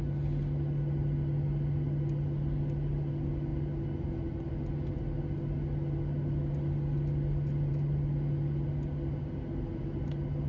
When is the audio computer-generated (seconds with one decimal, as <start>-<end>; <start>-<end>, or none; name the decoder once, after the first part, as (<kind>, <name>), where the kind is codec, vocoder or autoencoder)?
none